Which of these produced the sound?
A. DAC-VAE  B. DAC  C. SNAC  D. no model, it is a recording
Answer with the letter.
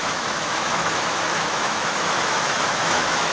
A